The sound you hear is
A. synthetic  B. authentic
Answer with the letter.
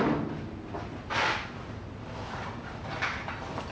B